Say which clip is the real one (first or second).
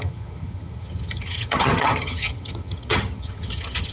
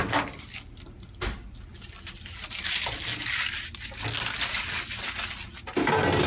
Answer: second